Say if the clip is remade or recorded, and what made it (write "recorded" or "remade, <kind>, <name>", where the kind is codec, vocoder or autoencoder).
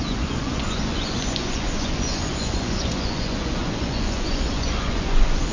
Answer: remade, vocoder, Vocos